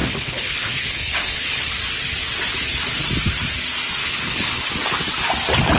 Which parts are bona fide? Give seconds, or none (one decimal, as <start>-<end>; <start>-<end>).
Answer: 1.7-4.0; 4.7-5.8